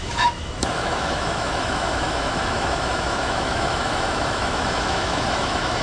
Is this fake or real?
fake